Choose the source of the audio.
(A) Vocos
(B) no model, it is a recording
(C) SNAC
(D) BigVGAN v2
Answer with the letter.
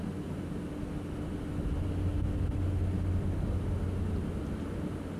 B